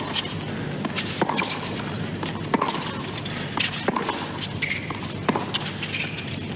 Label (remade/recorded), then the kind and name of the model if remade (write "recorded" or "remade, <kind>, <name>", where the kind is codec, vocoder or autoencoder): recorded